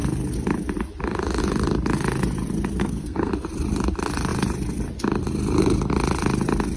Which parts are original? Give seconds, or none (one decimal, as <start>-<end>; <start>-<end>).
0.0-2.8; 3.3-6.8